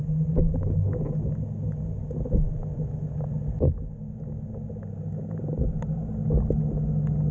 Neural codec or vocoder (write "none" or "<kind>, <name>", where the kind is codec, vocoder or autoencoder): none